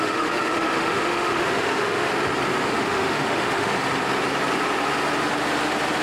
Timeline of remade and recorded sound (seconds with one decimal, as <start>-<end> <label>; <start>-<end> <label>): 0.0-2.1 remade; 2.1-2.7 recorded; 2.7-3.7 remade; 3.7-6.0 recorded